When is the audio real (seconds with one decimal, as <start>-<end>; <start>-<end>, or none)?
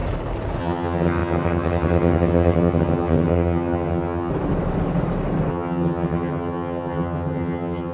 0.0-0.6; 4.3-5.5